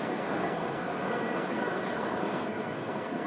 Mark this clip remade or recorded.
remade